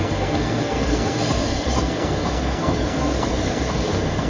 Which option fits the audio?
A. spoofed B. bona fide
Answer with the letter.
A